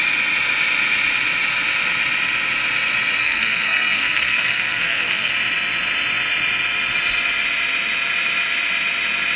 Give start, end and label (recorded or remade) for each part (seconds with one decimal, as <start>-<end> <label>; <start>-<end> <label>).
0.0-3.2 recorded; 3.2-5.3 remade; 5.3-9.4 recorded